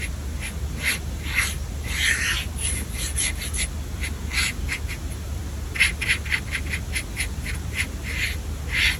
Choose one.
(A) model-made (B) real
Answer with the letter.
B